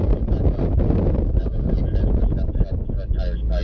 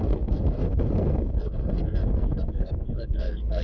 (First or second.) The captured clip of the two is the first